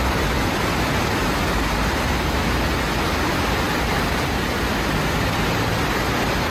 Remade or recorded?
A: recorded